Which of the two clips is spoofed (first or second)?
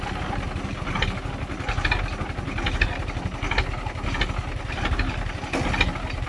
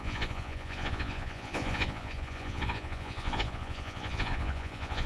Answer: second